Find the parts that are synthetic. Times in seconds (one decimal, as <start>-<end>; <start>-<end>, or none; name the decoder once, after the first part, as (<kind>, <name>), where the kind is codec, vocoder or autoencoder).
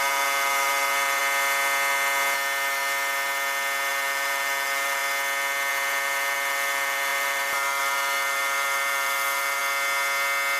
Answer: 0.0-1.2 (vocoder, BigVGAN v2); 3.9-5.0; 5.7-9.6